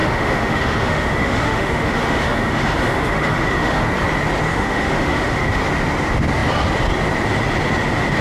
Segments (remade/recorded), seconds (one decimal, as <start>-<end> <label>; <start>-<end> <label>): 0.0-3.8 remade; 3.8-4.5 recorded; 4.5-5.6 remade; 5.6-8.2 recorded